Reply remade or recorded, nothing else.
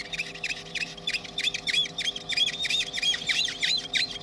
recorded